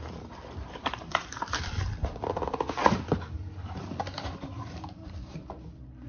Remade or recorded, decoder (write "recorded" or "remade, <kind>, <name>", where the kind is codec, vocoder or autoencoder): remade, vocoder, BigVGAN v2